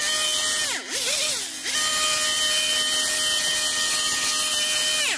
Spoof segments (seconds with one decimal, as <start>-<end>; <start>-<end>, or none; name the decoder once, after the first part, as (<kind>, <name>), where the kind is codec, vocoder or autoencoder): none